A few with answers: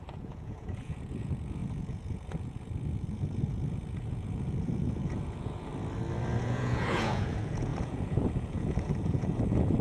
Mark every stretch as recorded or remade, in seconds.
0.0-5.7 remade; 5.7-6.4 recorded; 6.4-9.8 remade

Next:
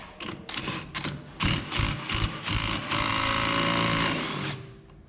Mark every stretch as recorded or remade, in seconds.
0.0-5.1 recorded